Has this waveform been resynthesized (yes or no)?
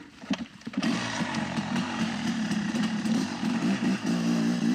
yes